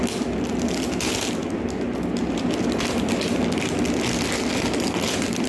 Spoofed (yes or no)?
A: no